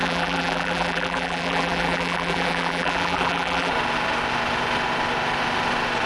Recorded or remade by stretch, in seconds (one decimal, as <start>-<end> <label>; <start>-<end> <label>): 0.0-3.7 remade; 3.7-6.1 recorded